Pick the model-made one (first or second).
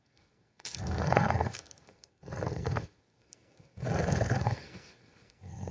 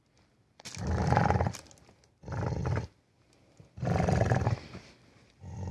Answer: first